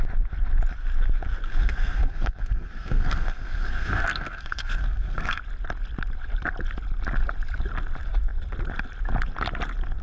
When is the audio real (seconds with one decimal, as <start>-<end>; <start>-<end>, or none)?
0.0-1.5; 5.4-10.0